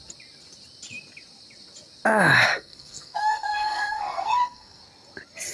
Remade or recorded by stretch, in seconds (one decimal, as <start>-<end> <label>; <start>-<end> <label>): 0.0-2.5 recorded; 2.5-4.8 remade; 4.8-5.5 recorded